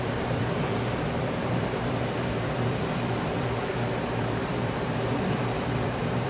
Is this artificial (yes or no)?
yes